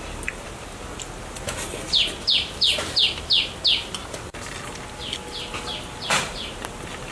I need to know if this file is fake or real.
real